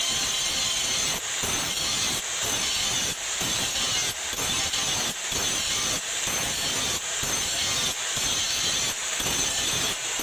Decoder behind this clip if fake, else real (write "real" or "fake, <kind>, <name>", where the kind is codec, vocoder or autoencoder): fake, vocoder, BigVGAN v2